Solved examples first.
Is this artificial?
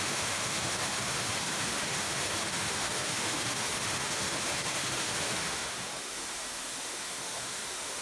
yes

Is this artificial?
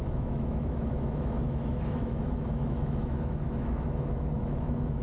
yes